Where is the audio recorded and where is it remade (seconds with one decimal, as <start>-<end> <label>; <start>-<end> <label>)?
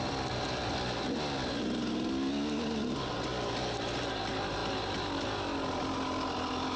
0.0-6.8 recorded